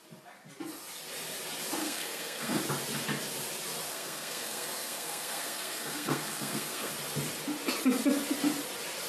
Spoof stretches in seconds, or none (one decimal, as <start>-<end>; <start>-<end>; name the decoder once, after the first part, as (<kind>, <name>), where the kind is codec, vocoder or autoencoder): 1.8-2.6 (codec, SNAC); 3.9-6.9